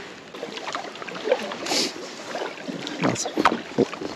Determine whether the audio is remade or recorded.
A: recorded